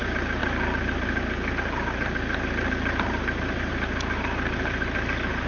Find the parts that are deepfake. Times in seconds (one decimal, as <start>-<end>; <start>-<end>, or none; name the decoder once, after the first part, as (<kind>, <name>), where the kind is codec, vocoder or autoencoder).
none